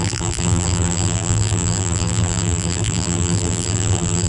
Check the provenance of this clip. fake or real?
fake